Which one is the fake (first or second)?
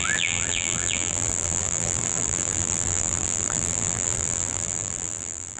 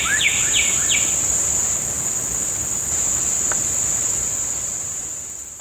first